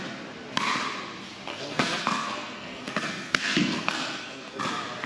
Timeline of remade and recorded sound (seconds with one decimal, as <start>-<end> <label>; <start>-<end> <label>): 0.0-1.5 recorded; 1.5-4.6 remade; 4.6-5.1 recorded